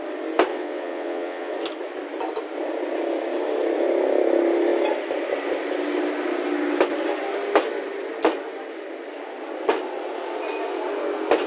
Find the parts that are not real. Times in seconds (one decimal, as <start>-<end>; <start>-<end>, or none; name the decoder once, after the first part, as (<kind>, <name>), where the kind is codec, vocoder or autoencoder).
0.5-1.5 (vocoder, WaveNeXt)